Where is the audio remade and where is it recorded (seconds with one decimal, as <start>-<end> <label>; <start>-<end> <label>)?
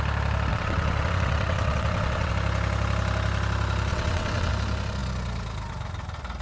0.0-0.5 recorded; 0.5-2.3 remade; 2.3-3.9 recorded; 3.9-4.5 remade; 4.5-6.4 recorded